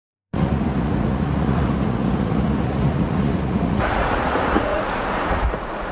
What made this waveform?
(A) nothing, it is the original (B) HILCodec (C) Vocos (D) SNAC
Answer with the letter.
C